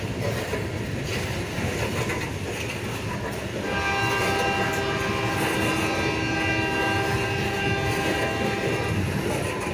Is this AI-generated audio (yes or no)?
no